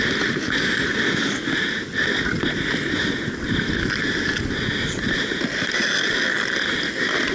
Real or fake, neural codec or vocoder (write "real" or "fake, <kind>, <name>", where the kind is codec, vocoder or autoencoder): real